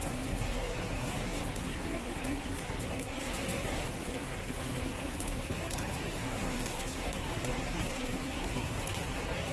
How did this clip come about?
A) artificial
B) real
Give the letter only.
A